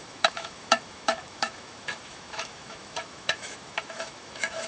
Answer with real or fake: fake